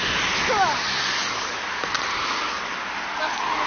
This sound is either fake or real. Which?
real